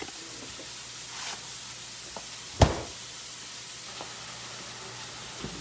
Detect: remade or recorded recorded